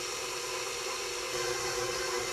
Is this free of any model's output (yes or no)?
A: yes